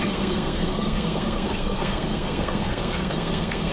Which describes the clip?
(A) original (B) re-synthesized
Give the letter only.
B